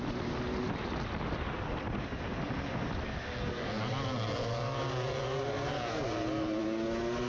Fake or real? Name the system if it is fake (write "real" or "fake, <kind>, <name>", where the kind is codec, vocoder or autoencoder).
real